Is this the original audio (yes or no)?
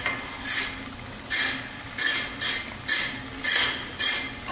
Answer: yes